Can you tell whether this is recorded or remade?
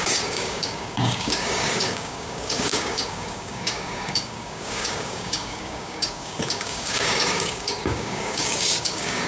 remade